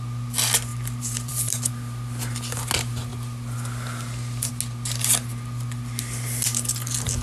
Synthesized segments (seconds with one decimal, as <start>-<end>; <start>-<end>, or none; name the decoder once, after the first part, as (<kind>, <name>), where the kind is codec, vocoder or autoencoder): 0.7-1.7 (vocoder, BigVGAN v2)